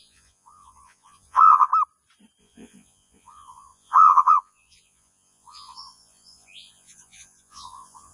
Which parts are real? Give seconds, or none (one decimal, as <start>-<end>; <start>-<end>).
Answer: 1.7-2.4